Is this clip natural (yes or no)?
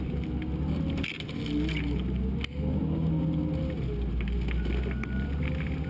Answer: yes